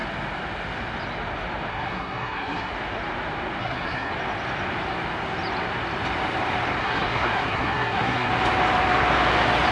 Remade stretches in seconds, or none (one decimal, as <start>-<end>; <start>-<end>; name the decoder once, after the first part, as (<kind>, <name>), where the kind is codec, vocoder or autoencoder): 1.7-2.7 (codec, SNAC); 3.6-4.1; 6.8-8.3